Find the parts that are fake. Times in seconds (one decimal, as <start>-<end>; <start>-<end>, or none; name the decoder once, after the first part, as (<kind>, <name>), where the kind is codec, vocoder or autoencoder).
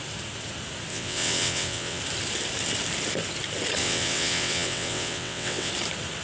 0.9-2.0 (vocoder, WaveNeXt); 3.8-5.7